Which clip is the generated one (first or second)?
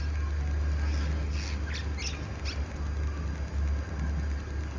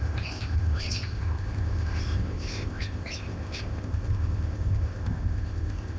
second